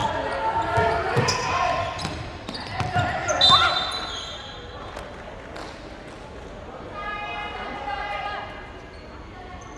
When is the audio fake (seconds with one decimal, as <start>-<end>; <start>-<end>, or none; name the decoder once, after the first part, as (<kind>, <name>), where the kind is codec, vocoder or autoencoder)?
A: none